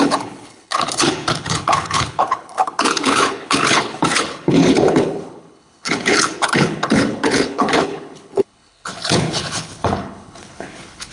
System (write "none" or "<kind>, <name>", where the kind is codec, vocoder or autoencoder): codec, HILCodec